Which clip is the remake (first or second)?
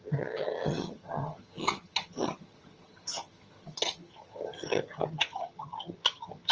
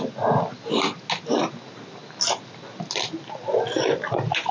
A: first